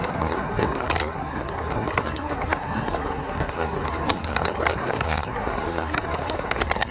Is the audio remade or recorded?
remade